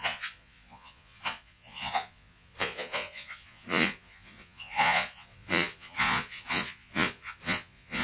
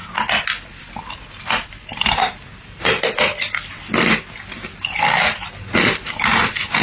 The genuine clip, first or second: second